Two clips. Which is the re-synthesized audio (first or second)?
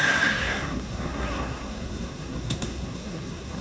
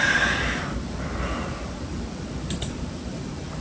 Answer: first